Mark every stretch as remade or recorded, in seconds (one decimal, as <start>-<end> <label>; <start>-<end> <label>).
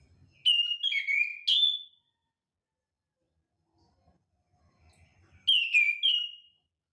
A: 0.0-6.9 recorded